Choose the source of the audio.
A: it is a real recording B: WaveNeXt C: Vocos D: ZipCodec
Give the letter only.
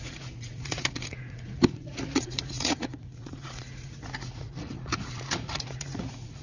C